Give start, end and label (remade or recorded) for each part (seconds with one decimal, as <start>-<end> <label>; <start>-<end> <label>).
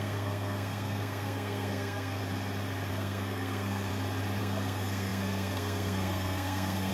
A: 0.0-2.2 remade; 2.2-2.9 recorded; 2.9-3.9 remade; 3.9-4.4 recorded; 4.4-6.9 remade